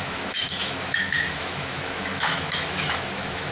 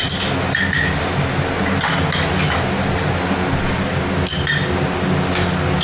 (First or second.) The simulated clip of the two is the first